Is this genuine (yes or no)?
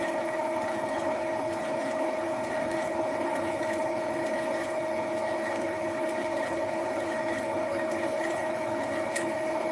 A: no